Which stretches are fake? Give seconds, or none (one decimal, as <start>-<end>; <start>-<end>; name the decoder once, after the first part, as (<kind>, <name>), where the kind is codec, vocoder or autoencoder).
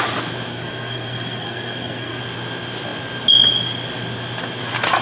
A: 0.5-2.2 (codec, SNAC)